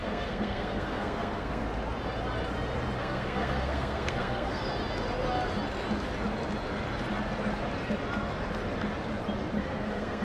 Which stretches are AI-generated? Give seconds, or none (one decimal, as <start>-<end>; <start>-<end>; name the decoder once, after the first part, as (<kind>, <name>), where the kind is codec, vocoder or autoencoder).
0.0-1.6 (codec, SNAC); 3.0-4.7; 9.6-10.2